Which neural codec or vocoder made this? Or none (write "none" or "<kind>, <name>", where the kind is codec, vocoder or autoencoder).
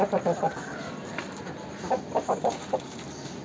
vocoder, BigVGAN v2